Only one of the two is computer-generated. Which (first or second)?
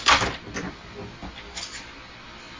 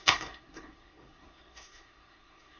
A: second